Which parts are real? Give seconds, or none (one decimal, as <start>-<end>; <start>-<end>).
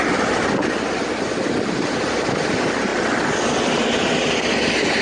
0.0-5.0